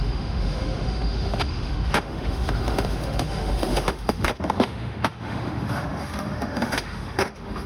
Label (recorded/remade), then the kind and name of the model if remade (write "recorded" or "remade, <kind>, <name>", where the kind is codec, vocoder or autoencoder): remade, autoencoder, DAC-VAE